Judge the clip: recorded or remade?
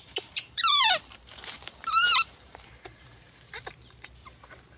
remade